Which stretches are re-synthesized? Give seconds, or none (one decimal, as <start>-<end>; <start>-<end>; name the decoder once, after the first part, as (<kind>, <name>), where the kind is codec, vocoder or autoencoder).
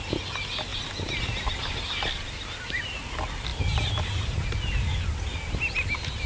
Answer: none